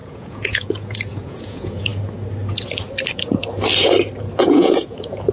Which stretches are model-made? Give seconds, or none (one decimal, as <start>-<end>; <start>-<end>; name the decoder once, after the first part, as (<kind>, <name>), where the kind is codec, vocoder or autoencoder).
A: 0.0-1.9 (vocoder, Vocos); 4.4-5.3